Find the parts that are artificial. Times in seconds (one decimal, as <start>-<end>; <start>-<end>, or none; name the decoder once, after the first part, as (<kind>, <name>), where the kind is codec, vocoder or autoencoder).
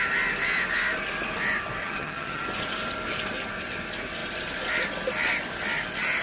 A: 1.8-2.4 (vocoder, HiFi-GAN)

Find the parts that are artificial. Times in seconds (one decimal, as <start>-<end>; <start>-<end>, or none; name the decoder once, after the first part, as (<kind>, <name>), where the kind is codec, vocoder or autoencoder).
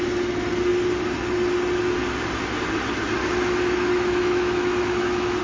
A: 3.2-5.4 (autoencoder, DAC-VAE)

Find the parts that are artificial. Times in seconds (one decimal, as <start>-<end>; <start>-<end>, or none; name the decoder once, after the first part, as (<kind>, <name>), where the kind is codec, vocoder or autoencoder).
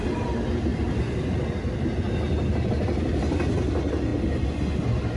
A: none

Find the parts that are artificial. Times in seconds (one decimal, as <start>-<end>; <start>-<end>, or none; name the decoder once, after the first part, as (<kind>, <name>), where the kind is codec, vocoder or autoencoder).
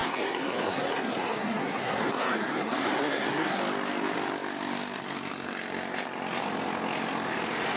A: 0.0-3.6 (codec, SNAC)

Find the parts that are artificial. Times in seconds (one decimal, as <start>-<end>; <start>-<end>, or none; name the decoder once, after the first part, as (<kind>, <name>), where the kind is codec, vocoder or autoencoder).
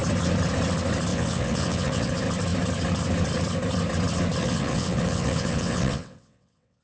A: 1.1-2.1 (vocoder, WaveNeXt); 4.4-6.8